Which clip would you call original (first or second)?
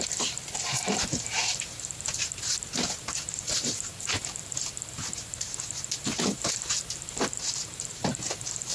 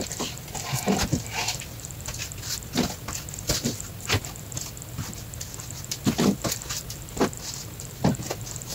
second